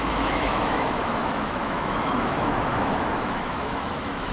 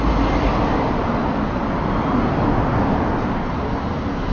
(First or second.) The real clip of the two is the second